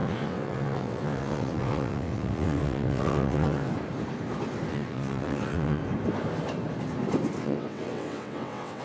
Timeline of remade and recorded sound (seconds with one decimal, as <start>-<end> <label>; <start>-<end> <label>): 0.0-3.7 remade; 3.7-4.7 recorded; 4.7-5.8 remade; 5.8-7.4 recorded; 7.4-8.8 remade